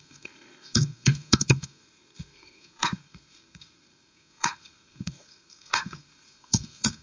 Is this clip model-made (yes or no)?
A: yes